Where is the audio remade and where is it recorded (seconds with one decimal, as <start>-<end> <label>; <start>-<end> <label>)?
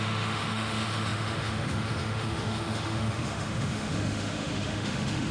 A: 0.0-5.3 remade